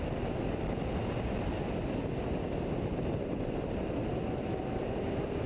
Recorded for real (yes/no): yes